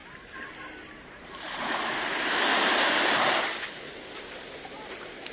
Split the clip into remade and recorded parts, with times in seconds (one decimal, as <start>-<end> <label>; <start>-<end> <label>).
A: 0.0-1.9 remade; 1.9-2.5 recorded; 2.5-3.4 remade; 3.4-5.3 recorded